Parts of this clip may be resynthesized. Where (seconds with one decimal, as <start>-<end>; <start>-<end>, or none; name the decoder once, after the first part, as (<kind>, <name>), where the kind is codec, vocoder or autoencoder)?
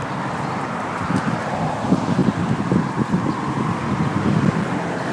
none